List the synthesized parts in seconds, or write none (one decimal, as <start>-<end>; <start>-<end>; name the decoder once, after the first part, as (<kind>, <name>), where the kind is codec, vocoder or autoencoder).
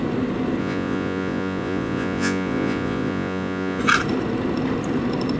0.6-3.8 (vocoder, Vocos)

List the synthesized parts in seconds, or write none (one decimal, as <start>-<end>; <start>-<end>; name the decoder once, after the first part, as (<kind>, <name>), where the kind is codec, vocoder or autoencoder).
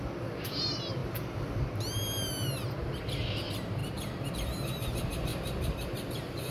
5.3-6.5 (vocoder, BigVGAN v2)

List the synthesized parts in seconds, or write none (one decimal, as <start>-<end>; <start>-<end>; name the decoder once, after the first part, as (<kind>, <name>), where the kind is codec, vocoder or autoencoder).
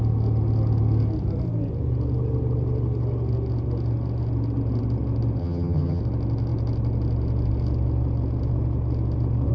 5.4-6.0 (vocoder, HiFi-GAN)